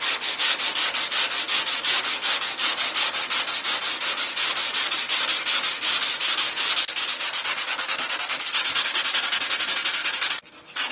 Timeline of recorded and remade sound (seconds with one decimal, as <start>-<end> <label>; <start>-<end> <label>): 0.0-10.9 recorded